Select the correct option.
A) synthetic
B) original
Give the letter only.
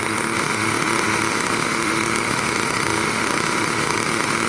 A